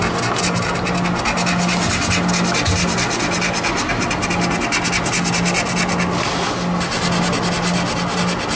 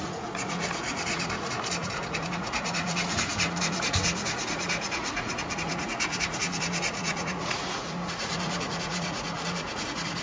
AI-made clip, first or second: second